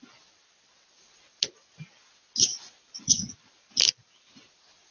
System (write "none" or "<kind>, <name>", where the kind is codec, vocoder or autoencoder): none